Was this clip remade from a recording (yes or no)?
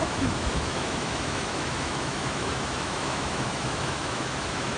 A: yes